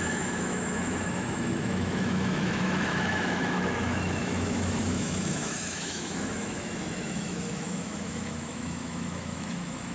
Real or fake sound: fake